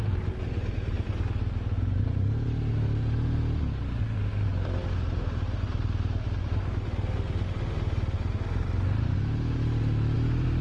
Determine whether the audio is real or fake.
real